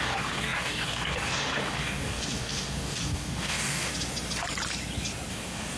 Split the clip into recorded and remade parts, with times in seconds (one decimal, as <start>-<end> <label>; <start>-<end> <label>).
0.0-3.9 remade; 3.9-5.3 recorded; 5.3-5.8 remade